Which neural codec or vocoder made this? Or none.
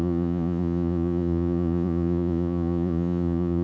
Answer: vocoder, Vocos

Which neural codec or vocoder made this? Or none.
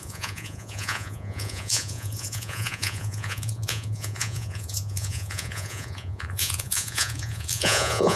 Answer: vocoder, Vocos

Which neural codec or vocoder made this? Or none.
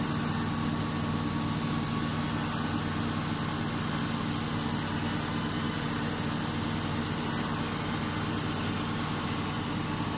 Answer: none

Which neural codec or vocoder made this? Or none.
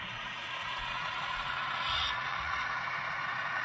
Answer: vocoder, Vocos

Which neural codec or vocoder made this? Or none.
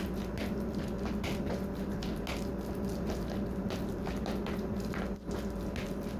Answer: none